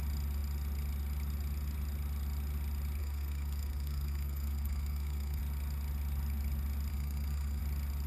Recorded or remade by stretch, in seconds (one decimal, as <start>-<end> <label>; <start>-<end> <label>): 0.0-3.0 recorded; 3.0-5.4 remade; 5.4-6.9 recorded; 6.9-7.6 remade; 7.6-8.1 recorded